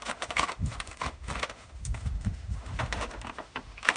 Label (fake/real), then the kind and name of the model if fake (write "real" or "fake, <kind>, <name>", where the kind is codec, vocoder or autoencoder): fake, autoencoder, DAC-VAE